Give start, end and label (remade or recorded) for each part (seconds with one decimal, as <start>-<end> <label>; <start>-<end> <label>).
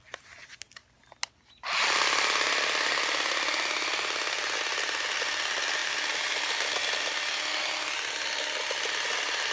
0.0-9.5 recorded